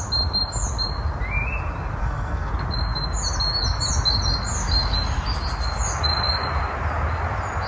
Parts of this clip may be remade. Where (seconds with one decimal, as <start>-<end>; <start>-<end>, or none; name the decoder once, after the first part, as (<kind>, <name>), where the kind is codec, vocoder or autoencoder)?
2.0-2.5 (codec, SNAC)